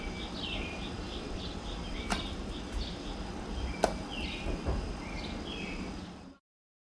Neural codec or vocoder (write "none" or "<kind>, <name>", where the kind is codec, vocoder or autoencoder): none